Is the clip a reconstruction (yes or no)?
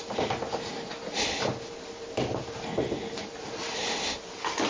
no